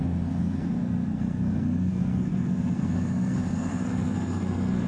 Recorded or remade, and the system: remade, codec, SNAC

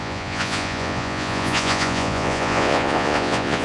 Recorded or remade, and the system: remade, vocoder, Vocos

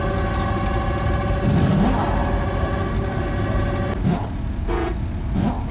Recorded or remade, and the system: recorded